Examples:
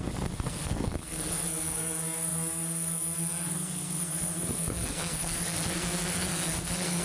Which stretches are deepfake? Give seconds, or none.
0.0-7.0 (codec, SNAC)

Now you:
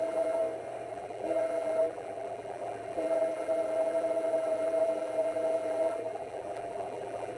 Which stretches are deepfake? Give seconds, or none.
0.0-0.4 (vocoder, BigVGAN v2); 0.9-7.4